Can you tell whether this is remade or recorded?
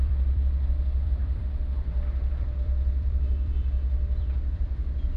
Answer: remade